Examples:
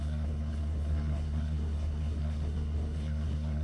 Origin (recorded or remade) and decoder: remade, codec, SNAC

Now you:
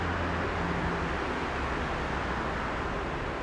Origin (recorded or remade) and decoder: recorded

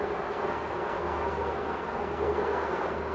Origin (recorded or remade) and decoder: remade, codec, SNAC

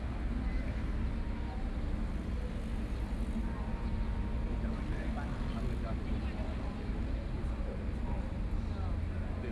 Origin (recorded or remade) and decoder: recorded